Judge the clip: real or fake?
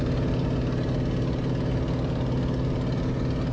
real